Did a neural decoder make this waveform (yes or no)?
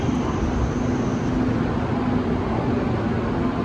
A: no